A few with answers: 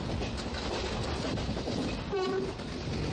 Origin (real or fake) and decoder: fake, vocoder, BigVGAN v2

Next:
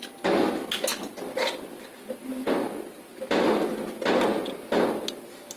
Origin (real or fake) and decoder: real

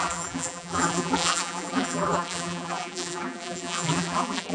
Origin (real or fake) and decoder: fake, vocoder, BigVGAN v2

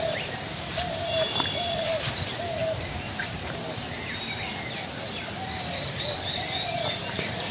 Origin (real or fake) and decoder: fake, vocoder, BigVGAN v2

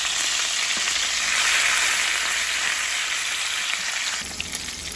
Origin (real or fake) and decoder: real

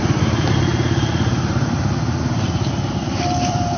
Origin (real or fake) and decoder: fake, vocoder, BigVGAN v2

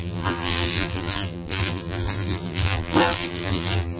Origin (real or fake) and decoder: fake, vocoder, BigVGAN v2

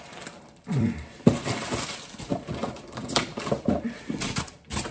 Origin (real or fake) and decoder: fake, vocoder, BigVGAN v2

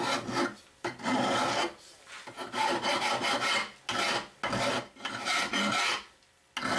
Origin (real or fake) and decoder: real